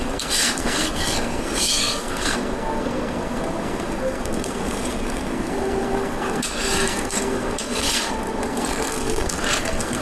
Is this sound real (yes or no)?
no